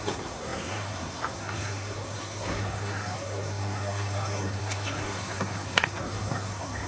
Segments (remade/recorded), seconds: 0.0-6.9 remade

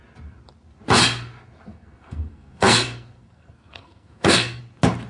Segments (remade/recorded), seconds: 0.0-1.7 recorded; 1.7-4.6 remade; 4.6-5.1 recorded

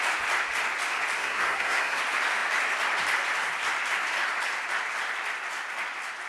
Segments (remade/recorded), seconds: 0.0-1.2 recorded; 1.2-2.0 remade; 2.0-6.3 recorded

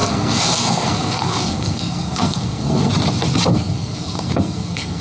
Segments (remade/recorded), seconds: 0.0-2.9 remade; 2.9-3.5 recorded; 3.5-5.0 remade

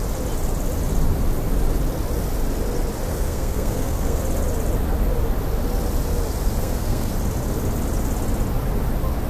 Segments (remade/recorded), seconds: 0.0-3.1 recorded; 3.1-4.2 remade; 4.2-6.6 recorded; 6.6-7.1 remade; 7.1-9.3 recorded

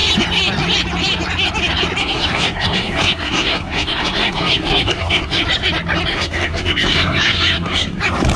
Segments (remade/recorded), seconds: 0.0-2.0 recorded; 2.0-5.4 remade; 5.4-6.1 recorded; 6.1-8.0 remade; 8.0-8.4 recorded